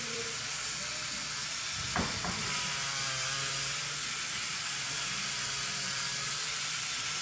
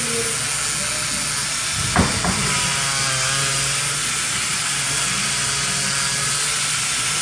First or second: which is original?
second